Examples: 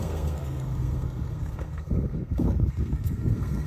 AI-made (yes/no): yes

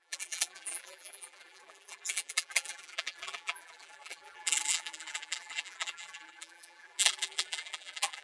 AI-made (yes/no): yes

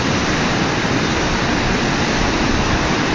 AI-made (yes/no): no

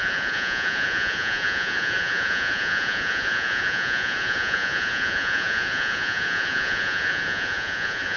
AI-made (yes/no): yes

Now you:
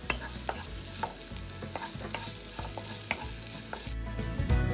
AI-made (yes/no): no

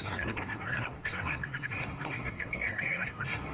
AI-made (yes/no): yes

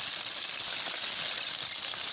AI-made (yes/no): no